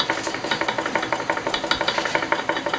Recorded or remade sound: recorded